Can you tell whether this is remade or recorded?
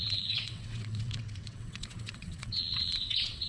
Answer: remade